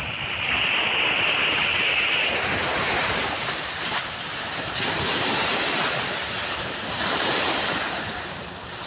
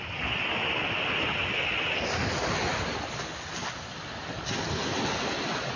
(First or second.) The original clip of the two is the second